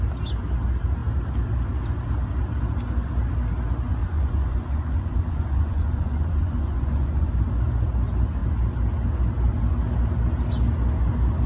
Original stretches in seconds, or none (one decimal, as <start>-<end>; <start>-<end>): 0.0-4.0; 7.3-11.5